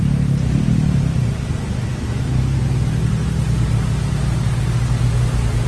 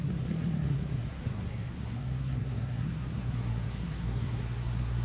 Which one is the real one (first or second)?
first